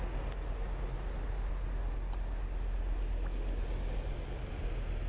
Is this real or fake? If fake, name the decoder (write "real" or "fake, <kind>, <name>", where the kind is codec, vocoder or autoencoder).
real